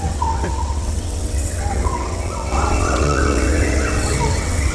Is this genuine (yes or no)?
no